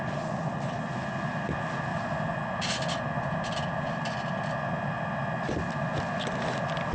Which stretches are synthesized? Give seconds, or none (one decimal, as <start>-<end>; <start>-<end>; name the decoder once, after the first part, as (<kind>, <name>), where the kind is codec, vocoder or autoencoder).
1.9-3.9 (vocoder, BigVGAN v2)